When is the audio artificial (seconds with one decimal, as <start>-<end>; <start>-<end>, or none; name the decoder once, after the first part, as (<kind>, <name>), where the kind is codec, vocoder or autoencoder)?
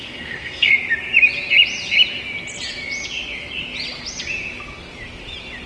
0.0-0.7 (codec, SNAC)